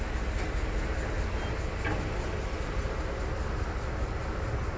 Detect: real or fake real